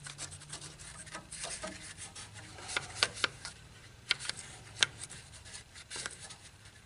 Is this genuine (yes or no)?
no